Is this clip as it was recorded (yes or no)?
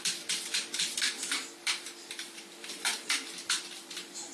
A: no